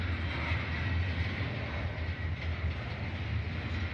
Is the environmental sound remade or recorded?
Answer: recorded